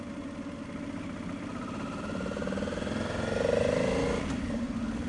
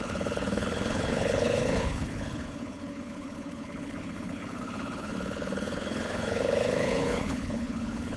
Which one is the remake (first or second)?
second